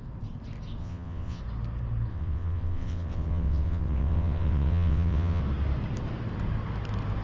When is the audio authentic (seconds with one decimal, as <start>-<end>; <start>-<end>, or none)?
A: 0.0-0.8; 1.4-2.1; 5.4-7.2